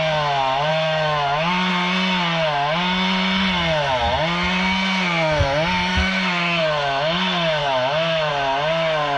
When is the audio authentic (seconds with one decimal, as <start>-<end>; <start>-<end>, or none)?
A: 0.0-0.7; 1.7-5.9; 6.6-7.6; 8.3-9.2